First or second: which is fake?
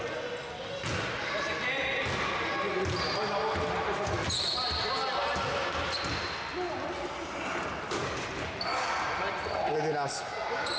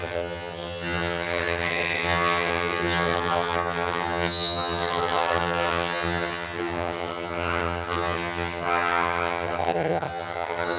second